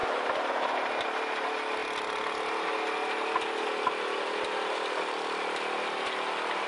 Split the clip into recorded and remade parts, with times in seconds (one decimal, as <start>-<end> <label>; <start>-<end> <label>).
0.0-6.7 recorded